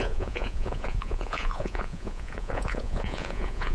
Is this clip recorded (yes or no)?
no